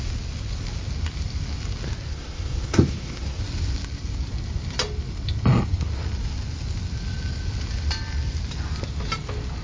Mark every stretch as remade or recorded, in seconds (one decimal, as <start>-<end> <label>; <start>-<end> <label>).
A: 0.0-2.1 recorded; 2.1-3.4 remade; 3.4-9.6 recorded